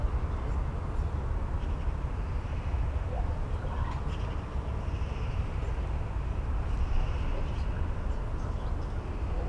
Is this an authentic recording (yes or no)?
yes